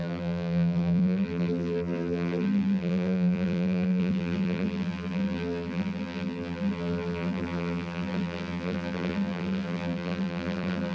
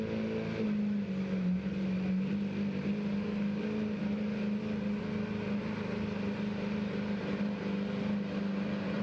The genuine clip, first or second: second